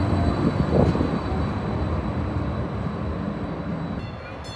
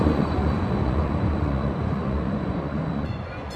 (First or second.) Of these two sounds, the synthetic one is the second